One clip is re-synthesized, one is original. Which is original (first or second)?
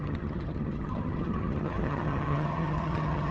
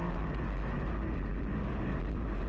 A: second